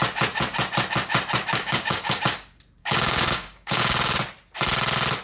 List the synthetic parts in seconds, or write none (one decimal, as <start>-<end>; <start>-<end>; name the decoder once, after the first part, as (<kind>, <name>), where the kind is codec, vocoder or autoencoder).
1.5-2.2 (codec, DAC); 2.8-3.8